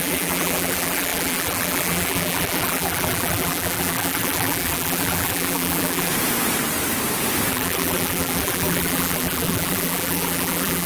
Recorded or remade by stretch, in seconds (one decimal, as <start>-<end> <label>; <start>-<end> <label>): 0.0-6.1 remade; 6.1-7.5 recorded; 7.5-10.9 remade